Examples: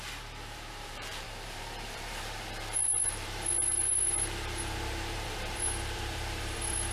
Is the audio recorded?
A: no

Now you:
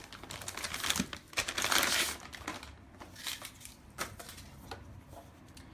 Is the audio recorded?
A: yes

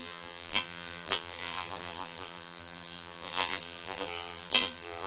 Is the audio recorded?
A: no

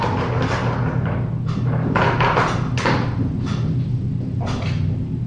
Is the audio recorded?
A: yes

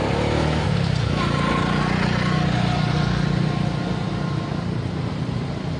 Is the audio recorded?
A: yes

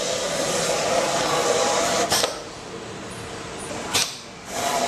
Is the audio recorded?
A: yes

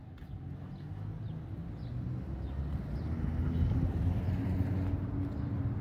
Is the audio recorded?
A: yes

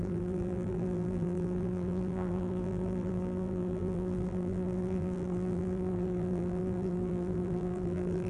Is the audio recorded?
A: no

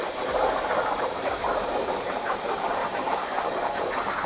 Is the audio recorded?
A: no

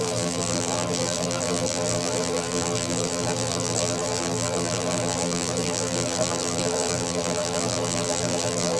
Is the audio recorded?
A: no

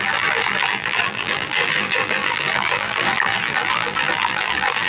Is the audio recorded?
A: no